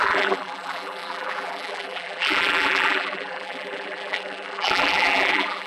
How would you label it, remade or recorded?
remade